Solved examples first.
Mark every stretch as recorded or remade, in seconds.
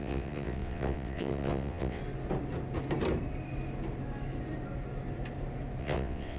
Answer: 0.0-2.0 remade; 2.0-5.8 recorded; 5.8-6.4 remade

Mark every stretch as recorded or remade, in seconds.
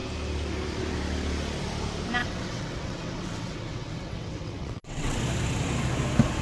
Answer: 0.0-2.2 recorded; 2.2-5.2 remade; 5.2-6.4 recorded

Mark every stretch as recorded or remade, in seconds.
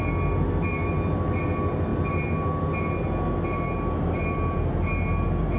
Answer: 0.0-5.6 recorded